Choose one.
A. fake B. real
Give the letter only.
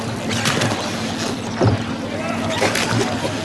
B